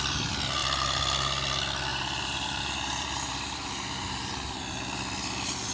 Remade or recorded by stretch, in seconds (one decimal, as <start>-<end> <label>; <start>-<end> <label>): 0.0-1.9 recorded; 1.9-4.3 remade; 4.3-5.7 recorded

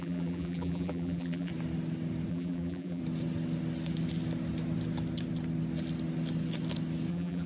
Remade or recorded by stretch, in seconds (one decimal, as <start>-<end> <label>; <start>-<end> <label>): 0.0-1.5 remade; 1.5-2.3 recorded; 2.3-3.0 remade; 3.0-7.1 recorded; 7.1-7.5 remade

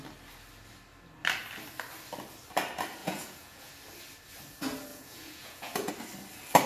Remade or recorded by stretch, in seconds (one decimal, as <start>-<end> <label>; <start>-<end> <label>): 0.0-3.0 recorded; 3.0-3.7 remade; 3.7-4.9 recorded; 4.9-5.9 remade; 5.9-6.7 recorded

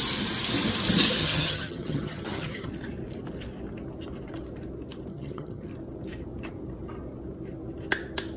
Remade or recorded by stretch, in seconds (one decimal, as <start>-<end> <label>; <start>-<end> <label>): 0.0-1.2 recorded; 1.2-2.7 remade; 2.7-5.1 recorded; 5.1-5.7 remade; 5.7-8.4 recorded

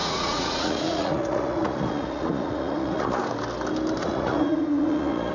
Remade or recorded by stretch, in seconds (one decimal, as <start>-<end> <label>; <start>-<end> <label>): 0.0-3.2 remade; 3.2-4.0 recorded; 4.0-5.3 remade